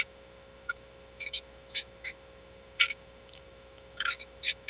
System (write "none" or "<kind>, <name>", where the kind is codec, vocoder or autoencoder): autoencoder, DAC-VAE